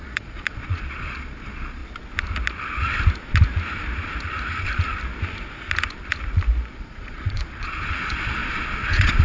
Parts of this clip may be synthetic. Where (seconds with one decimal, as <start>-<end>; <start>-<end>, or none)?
0.0-1.8; 6.7-9.2